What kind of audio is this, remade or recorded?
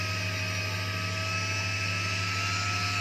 recorded